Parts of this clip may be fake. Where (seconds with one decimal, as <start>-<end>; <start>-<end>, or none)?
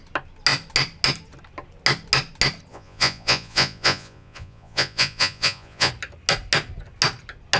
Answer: 2.7-5.9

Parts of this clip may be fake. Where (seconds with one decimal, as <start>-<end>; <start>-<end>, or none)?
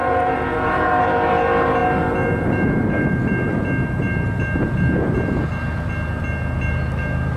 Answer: 0.0-0.9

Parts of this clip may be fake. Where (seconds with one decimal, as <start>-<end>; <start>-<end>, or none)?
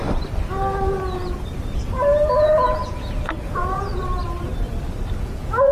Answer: 2.4-3.9; 5.2-5.7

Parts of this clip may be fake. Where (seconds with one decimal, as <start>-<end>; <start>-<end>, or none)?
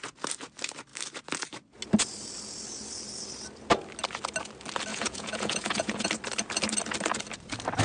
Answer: 4.9-6.1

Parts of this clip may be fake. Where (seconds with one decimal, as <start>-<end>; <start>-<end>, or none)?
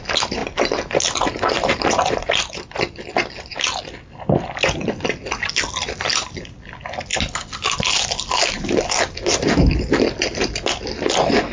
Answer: none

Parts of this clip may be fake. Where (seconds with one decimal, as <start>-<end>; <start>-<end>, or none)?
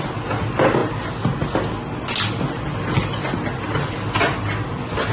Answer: none